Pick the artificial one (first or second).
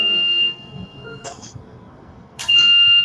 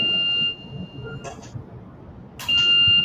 first